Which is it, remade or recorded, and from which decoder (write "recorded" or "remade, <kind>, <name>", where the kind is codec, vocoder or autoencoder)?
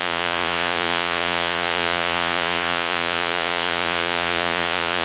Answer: remade, vocoder, Vocos